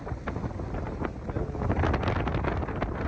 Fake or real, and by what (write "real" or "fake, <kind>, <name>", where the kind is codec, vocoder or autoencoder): real